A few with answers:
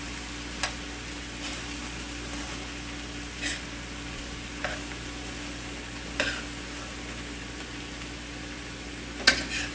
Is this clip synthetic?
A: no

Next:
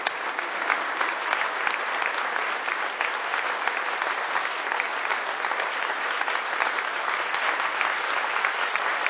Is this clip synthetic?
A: no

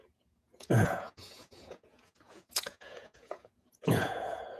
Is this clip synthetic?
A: yes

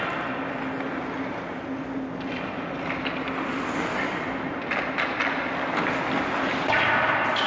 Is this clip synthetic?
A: no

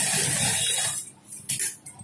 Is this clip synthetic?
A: no